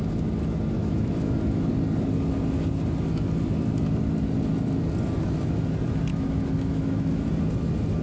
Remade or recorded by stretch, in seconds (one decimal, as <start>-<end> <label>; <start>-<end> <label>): 0.0-0.8 recorded; 0.8-1.7 remade; 1.7-6.1 recorded; 6.1-7.3 remade; 7.3-8.0 recorded

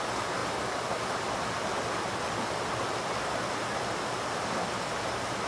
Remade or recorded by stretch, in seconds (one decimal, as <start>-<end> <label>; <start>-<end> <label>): 0.0-5.5 recorded